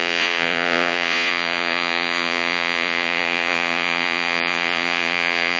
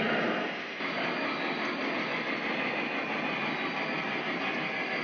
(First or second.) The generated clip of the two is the first